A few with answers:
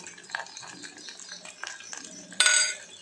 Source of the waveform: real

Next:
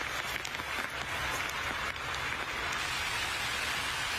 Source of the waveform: real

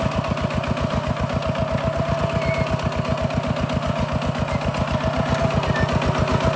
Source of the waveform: real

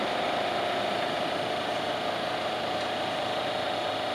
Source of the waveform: fake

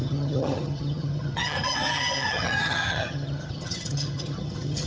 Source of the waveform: fake